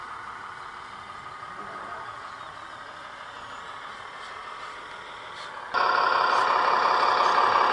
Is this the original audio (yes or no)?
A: yes